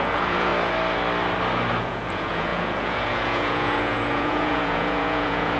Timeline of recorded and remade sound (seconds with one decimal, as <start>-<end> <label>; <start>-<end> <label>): 0.0-0.5 remade; 0.5-1.8 recorded; 1.8-5.6 remade